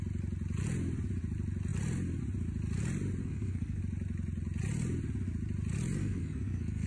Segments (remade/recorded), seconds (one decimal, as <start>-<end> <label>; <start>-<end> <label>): 0.0-3.2 recorded; 3.2-3.8 remade; 3.8-6.0 recorded; 6.0-6.9 remade